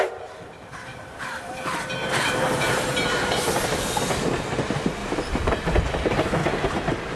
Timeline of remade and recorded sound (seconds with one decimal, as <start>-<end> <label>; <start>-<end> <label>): 0.0-0.9 recorded; 0.9-1.5 remade; 1.5-2.0 recorded; 2.0-3.6 remade; 3.6-5.0 recorded; 5.0-5.5 remade; 5.5-6.4 recorded; 6.4-7.2 remade